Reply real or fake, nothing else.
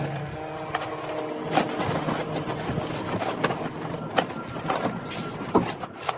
real